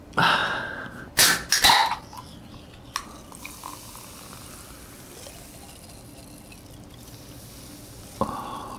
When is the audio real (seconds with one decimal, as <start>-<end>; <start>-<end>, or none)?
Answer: 0.0-8.8